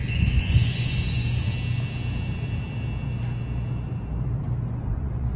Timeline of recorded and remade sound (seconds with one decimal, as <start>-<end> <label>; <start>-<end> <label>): 0.0-1.5 remade; 1.5-4.7 recorded; 4.7-5.4 remade